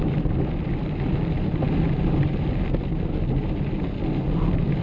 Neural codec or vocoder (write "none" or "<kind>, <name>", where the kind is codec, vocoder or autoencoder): none